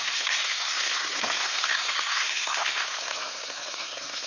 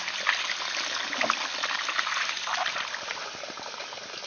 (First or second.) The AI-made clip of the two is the first